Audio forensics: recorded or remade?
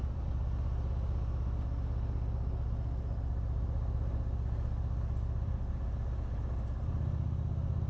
recorded